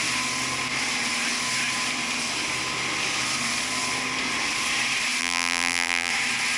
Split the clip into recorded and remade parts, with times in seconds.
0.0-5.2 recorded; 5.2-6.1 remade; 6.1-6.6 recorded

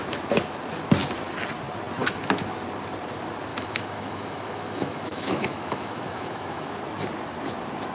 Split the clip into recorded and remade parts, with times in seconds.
0.0-3.5 recorded; 3.5-6.7 remade; 6.7-7.9 recorded

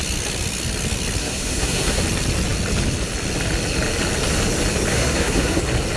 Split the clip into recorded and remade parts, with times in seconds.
0.0-1.2 recorded; 1.2-2.0 remade; 2.0-4.9 recorded; 4.9-5.6 remade; 5.6-6.0 recorded